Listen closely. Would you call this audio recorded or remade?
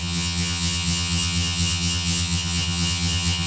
remade